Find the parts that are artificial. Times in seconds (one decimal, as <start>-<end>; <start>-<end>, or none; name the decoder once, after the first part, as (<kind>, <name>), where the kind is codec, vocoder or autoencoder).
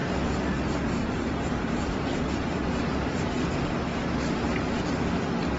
0.0-3.4 (vocoder, BigVGAN v2); 3.9-4.9